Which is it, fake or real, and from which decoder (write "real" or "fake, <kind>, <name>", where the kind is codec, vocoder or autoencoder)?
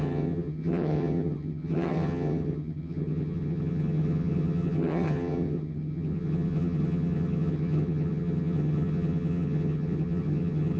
fake, vocoder, HiFi-GAN